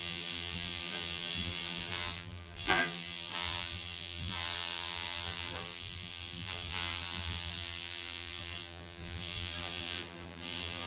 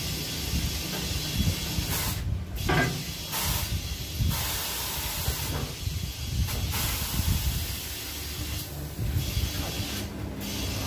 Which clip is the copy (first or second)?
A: first